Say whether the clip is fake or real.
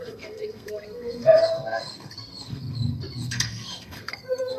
fake